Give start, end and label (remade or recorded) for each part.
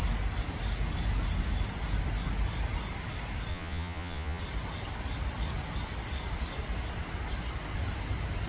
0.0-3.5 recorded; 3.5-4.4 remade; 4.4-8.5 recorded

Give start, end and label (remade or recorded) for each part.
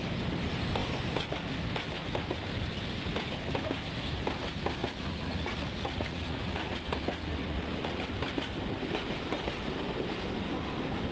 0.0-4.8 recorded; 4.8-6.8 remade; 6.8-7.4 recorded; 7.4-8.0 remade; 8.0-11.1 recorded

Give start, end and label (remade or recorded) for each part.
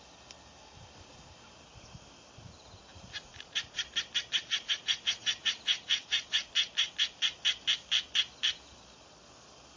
0.0-2.9 recorded; 2.9-3.8 remade; 3.8-4.4 recorded; 4.4-6.5 remade; 6.5-9.8 recorded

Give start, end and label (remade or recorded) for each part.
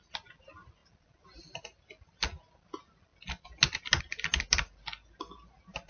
0.0-5.9 recorded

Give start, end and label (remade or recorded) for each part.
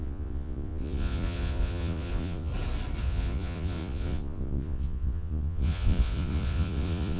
0.0-2.5 remade; 2.5-3.0 recorded; 3.0-7.2 remade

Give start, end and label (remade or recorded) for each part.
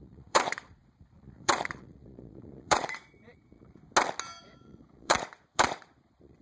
0.0-3.8 remade; 3.8-4.4 recorded; 4.4-6.4 remade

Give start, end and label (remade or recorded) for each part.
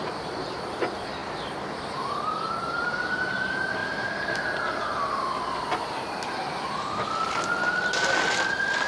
0.0-8.9 recorded